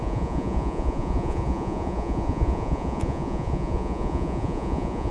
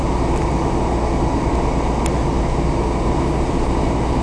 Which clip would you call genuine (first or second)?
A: second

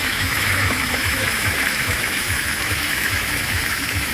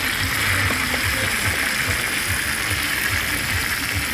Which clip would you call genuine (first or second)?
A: second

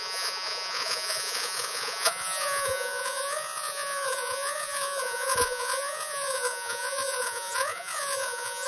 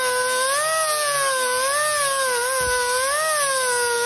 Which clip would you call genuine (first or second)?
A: second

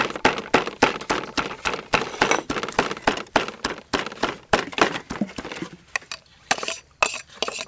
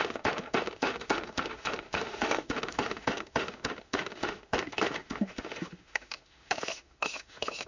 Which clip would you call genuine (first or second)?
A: first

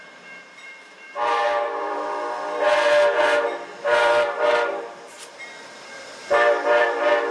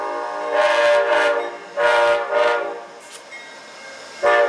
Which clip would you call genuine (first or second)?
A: second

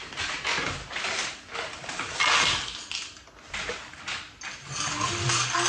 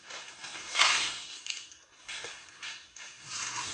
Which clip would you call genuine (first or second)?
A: first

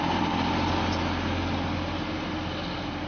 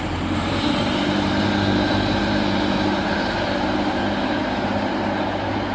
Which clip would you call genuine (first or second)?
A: first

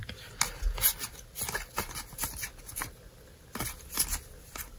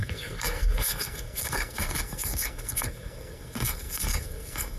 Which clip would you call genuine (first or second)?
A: first